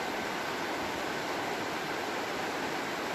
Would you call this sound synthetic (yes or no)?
no